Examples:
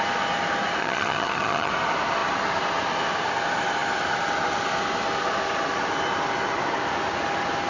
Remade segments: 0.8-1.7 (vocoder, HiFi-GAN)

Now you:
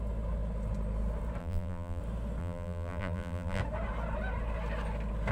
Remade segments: 1.4-2.0 (vocoder, BigVGAN v2); 2.4-3.6

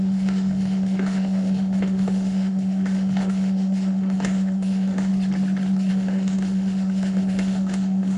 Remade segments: 0.0-5.1 (autoencoder, DAC-VAE); 5.9-8.2

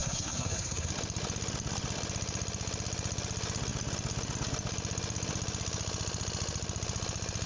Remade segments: 0.0-0.9 (codec, SNAC)